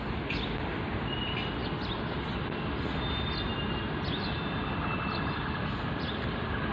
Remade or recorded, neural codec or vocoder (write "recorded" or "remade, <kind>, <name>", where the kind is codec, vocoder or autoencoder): recorded